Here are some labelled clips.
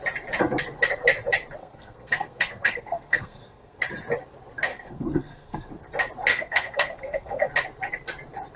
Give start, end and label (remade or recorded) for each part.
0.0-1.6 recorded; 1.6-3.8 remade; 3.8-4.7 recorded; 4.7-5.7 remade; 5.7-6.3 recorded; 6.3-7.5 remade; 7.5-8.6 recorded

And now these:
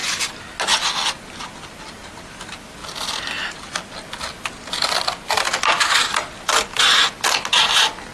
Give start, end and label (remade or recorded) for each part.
0.0-8.1 recorded